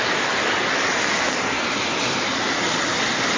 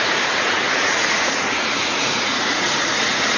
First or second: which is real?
first